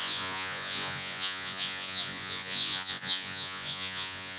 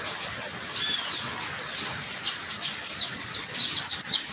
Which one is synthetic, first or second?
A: first